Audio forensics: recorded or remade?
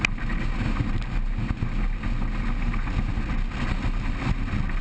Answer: recorded